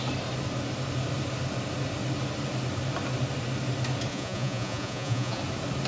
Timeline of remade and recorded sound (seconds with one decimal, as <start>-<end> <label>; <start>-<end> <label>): 0.0-4.1 recorded; 4.1-5.4 remade; 5.4-5.9 recorded

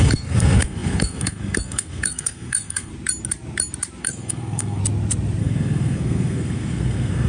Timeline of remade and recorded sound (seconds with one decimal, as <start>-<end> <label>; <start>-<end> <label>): 0.0-2.9 remade; 2.9-4.0 recorded; 4.0-4.8 remade; 4.8-5.4 recorded; 5.4-7.3 remade

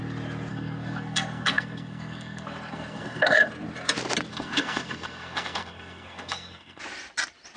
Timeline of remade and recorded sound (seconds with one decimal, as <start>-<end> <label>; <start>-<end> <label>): 0.0-0.5 recorded; 0.5-3.5 remade; 3.5-4.3 recorded; 4.3-6.8 remade; 6.8-7.6 recorded

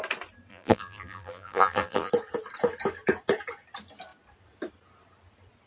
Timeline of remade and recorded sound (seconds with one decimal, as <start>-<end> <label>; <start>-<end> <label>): 0.0-0.5 recorded; 0.5-2.1 remade; 2.1-5.7 recorded

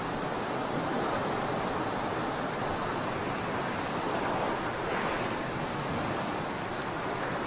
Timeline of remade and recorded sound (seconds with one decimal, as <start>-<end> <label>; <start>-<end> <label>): 0.0-7.5 recorded

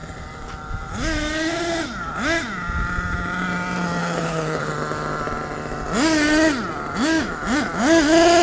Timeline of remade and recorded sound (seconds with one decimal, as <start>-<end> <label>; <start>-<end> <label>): 0.0-4.0 recorded; 4.0-4.7 remade; 4.7-8.4 recorded